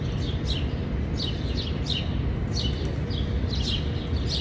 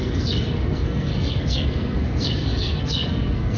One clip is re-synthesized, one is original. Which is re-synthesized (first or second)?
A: second